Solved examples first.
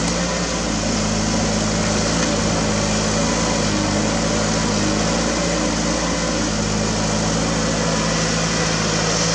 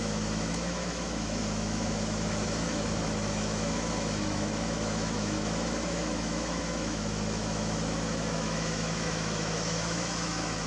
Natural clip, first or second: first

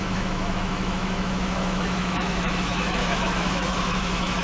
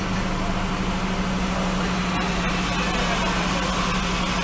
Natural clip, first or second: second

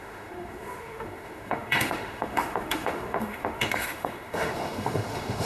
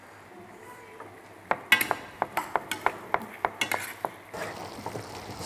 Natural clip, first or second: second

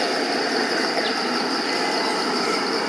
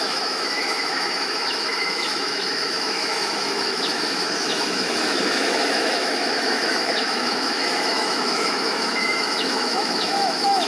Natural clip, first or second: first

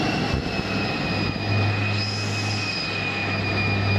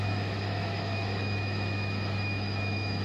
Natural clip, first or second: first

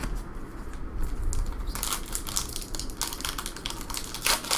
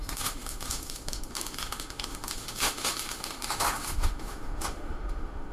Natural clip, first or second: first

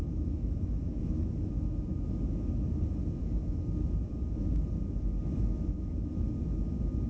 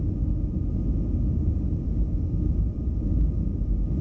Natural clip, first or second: second